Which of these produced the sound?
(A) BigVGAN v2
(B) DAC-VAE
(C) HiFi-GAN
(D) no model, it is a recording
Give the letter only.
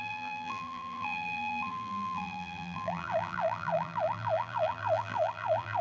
A